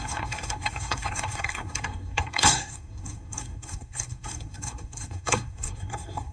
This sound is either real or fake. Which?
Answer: fake